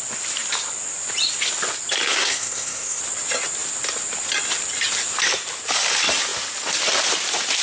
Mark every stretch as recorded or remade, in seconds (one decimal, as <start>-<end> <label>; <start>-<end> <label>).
0.0-2.1 recorded; 2.1-3.0 remade; 3.0-7.6 recorded

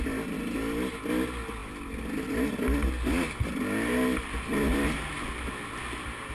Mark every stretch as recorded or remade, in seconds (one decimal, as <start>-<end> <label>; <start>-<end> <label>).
0.0-6.3 recorded

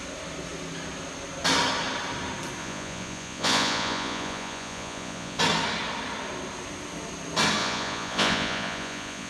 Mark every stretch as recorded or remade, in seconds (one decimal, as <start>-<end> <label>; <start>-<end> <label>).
0.0-2.6 recorded; 2.6-5.4 remade; 5.4-7.6 recorded; 7.6-9.3 remade

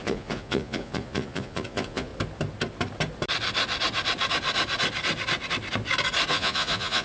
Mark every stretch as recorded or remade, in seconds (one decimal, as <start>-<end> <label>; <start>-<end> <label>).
0.0-2.1 remade; 2.1-6.3 recorded; 6.3-7.0 remade

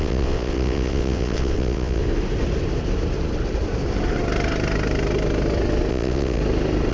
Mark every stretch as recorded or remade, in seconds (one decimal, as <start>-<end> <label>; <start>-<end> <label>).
0.0-2.0 remade; 2.0-5.9 recorded; 5.9-6.4 remade; 6.4-6.9 recorded

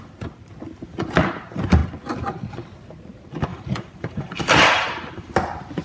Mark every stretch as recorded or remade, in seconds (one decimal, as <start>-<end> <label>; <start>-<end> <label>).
0.0-3.5 recorded; 3.5-5.3 remade; 5.3-5.8 recorded

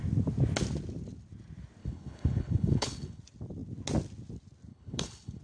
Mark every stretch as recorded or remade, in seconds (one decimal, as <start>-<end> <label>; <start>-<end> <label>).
0.0-1.8 recorded; 1.8-3.2 remade; 3.2-4.7 recorded; 4.7-5.4 remade

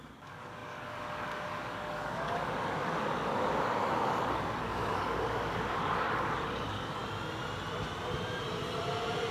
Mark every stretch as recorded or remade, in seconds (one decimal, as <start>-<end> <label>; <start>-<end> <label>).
0.0-7.0 remade; 7.0-9.3 recorded